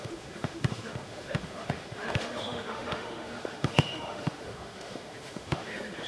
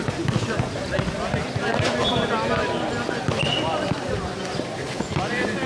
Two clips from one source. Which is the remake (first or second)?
first